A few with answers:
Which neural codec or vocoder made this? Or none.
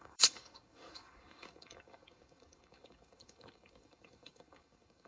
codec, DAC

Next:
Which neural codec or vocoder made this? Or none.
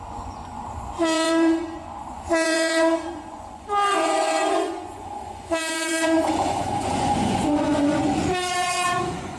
vocoder, Vocos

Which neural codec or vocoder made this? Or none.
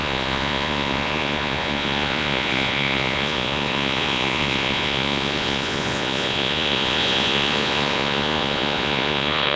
vocoder, Vocos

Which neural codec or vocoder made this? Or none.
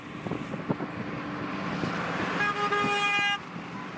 none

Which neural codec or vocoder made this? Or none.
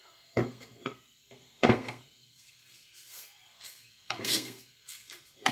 codec, SNAC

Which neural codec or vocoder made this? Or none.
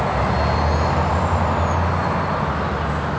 none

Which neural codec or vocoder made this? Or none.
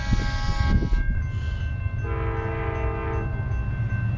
none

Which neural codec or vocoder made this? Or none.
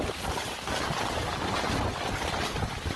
none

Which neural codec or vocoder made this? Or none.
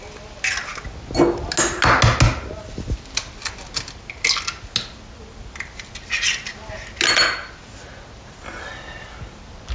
none